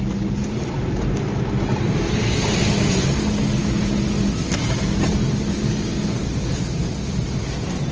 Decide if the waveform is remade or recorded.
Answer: recorded